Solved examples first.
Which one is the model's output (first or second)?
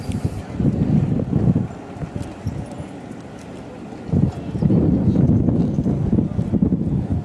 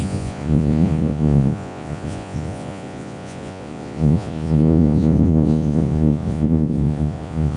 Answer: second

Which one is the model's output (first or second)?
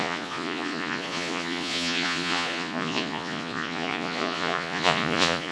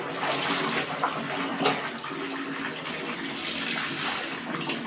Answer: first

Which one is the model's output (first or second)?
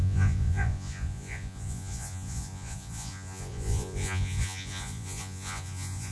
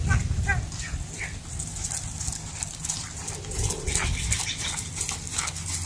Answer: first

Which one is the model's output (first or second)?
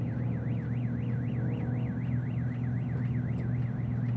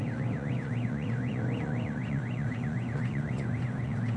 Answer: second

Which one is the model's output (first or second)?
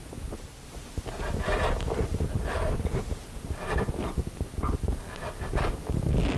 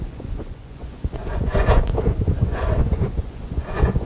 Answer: second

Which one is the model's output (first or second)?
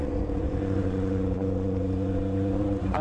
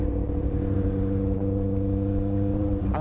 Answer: first